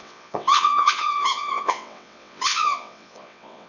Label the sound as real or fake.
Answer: fake